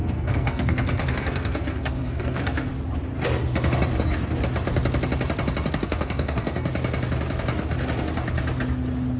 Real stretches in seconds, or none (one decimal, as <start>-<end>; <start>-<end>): 2.7-5.7; 6.7-9.2